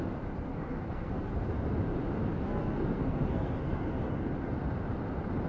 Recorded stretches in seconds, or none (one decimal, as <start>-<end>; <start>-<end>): 0.0-0.5; 1.3-2.3; 4.1-5.5